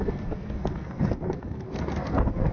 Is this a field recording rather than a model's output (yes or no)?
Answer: no